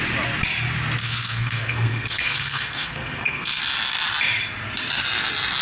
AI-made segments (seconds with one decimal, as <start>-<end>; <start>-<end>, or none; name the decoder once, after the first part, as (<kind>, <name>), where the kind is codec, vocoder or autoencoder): 1.0-3.6 (codec, SNAC)